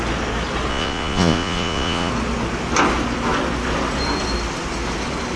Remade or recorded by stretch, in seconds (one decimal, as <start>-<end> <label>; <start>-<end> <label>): 0.0-0.7 recorded; 0.7-2.1 remade; 2.1-5.4 recorded